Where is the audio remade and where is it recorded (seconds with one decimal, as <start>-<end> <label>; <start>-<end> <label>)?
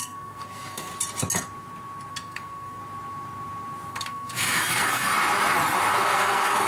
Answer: 0.0-0.9 remade; 0.9-2.1 recorded; 2.1-2.8 remade; 2.8-3.9 recorded; 3.9-5.1 remade; 5.1-5.9 recorded; 5.9-6.7 remade